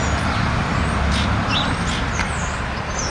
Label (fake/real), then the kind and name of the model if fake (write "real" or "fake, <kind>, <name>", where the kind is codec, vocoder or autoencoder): real